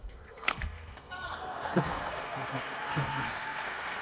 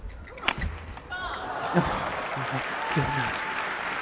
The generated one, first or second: first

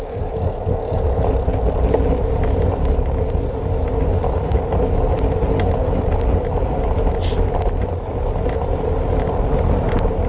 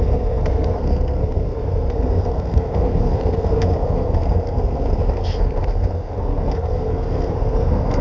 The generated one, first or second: second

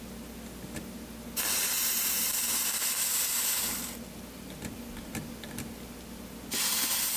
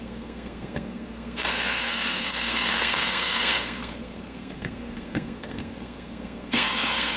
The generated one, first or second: second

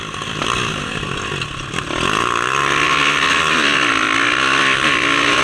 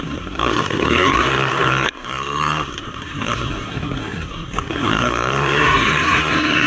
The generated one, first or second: second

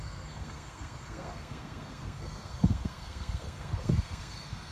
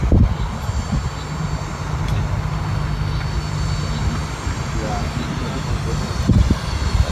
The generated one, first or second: first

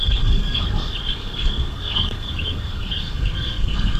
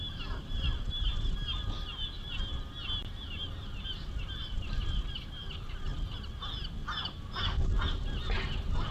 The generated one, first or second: first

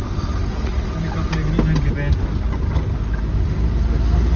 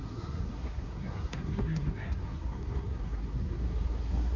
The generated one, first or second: second